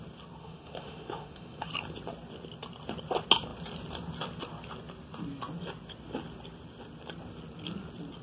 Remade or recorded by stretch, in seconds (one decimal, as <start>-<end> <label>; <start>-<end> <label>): 0.0-0.4 recorded; 0.4-1.7 remade; 1.7-8.2 recorded